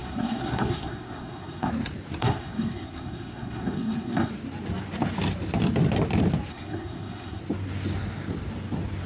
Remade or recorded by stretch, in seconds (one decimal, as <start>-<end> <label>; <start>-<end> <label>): 0.0-1.7 remade; 1.7-2.2 recorded; 2.2-4.3 remade; 4.3-6.5 recorded; 6.5-7.4 remade; 7.4-9.1 recorded